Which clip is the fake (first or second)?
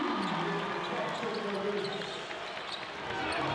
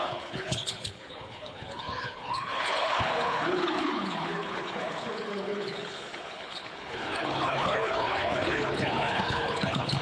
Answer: second